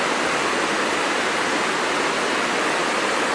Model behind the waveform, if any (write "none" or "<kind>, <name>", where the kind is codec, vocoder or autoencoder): none